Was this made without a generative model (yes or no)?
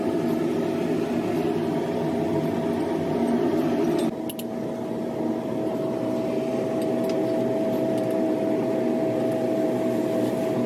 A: yes